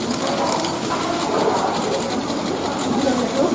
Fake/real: real